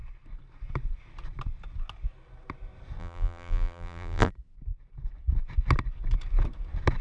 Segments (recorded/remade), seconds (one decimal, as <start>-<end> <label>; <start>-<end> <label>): 0.0-3.0 recorded; 3.0-4.3 remade; 4.3-7.0 recorded